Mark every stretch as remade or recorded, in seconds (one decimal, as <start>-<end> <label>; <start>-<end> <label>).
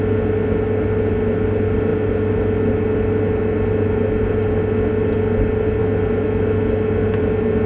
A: 0.0-7.7 recorded